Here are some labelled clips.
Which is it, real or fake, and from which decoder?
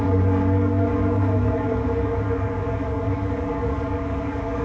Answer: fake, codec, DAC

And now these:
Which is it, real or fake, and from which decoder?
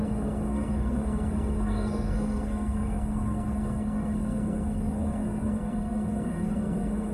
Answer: fake, codec, SNAC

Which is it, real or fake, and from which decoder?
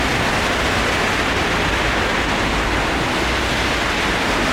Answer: real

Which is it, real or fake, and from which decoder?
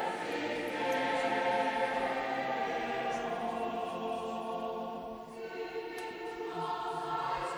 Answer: real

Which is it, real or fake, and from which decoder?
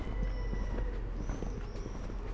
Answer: real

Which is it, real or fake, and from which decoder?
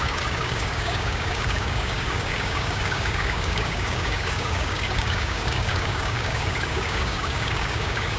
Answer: fake, codec, DAC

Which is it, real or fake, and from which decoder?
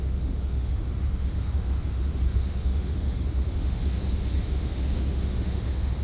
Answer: fake, autoencoder, DAC-VAE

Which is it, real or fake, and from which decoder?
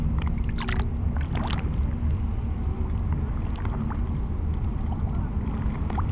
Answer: real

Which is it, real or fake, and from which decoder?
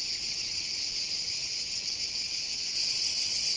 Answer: fake, vocoder, WaveNeXt